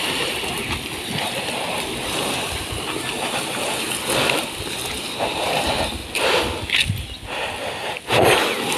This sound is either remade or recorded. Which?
recorded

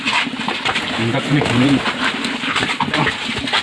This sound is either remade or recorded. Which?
remade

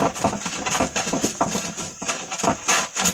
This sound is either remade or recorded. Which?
recorded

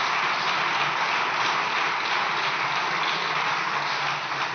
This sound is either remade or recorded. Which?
recorded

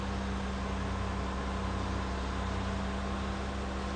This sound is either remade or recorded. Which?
recorded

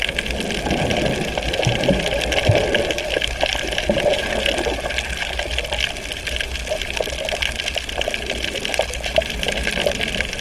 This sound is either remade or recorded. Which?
recorded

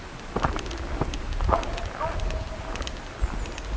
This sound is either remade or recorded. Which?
recorded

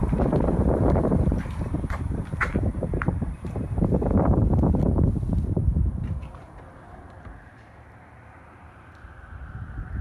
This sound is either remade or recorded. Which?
remade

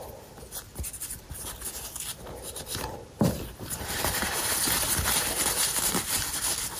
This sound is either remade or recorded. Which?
remade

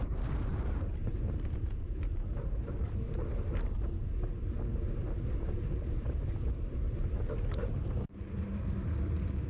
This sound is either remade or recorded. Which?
remade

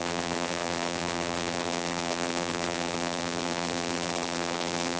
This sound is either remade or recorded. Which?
remade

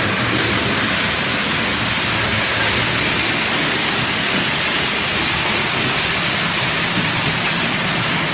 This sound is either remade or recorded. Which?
recorded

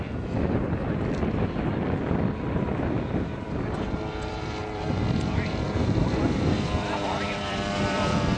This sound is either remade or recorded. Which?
remade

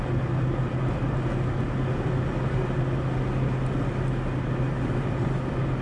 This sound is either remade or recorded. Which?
recorded